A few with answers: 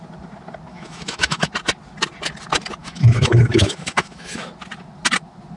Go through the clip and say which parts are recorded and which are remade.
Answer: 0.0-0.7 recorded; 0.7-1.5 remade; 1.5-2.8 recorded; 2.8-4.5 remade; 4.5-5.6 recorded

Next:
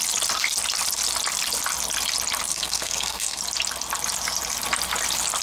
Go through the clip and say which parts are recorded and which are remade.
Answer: 0.0-2.5 recorded; 2.5-3.4 remade; 3.4-5.4 recorded

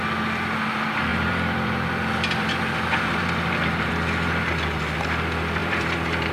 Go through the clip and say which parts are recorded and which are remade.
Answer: 0.0-1.1 recorded; 1.1-3.9 remade; 3.9-5.6 recorded; 5.6-6.3 remade